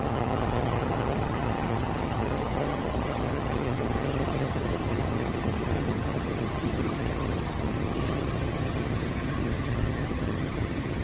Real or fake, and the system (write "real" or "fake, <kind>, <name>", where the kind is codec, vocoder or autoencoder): fake, vocoder, HiFi-GAN